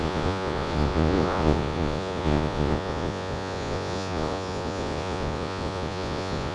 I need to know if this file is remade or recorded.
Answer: remade